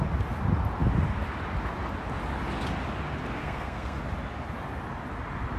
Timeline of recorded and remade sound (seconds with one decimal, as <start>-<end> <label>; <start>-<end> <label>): 0.0-3.4 recorded; 3.4-4.0 remade; 4.0-5.6 recorded